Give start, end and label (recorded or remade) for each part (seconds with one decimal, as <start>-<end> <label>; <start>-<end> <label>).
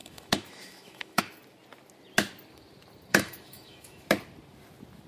0.0-1.2 remade; 1.2-3.1 recorded; 3.1-4.1 remade; 4.1-5.1 recorded